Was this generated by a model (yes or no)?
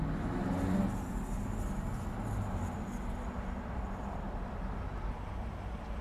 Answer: no